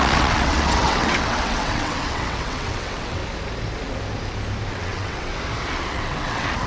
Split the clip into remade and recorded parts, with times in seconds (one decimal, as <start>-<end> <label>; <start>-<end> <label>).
0.0-3.2 remade; 3.2-4.7 recorded; 4.7-5.3 remade; 5.3-5.9 recorded; 5.9-6.7 remade